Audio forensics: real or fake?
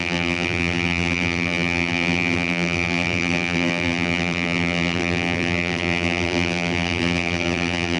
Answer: fake